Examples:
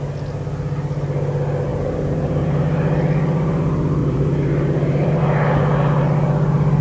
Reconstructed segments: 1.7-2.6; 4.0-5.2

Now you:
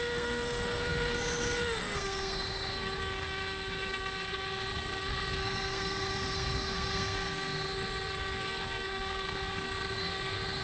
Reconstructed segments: 0.0-10.6

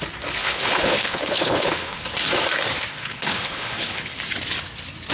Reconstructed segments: 0.4-2.0; 2.9-4.2

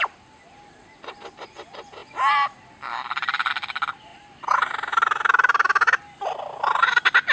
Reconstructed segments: none

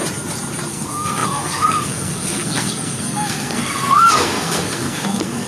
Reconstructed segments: 0.7-5.5

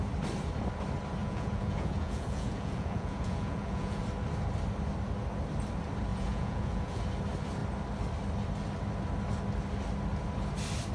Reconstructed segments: 1.2-4.0; 6.1-7.0